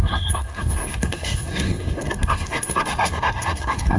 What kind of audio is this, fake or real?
fake